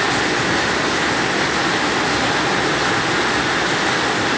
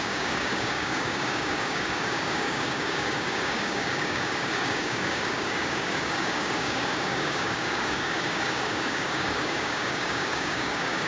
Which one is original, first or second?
first